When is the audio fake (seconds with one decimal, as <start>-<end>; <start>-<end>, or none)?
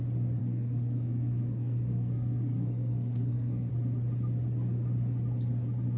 0.4-3.7